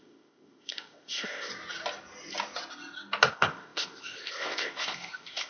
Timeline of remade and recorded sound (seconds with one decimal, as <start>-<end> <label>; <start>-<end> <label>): 0.0-1.5 remade; 1.5-3.3 recorded; 3.3-5.5 remade